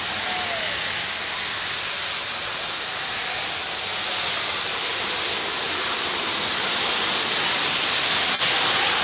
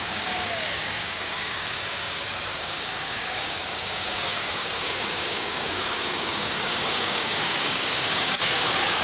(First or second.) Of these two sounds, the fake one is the second